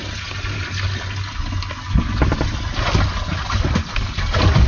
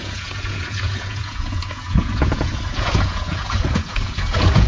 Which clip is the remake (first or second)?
second